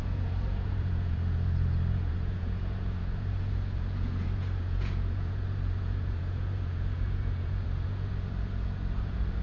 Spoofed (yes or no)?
yes